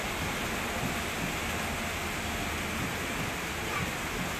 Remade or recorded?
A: recorded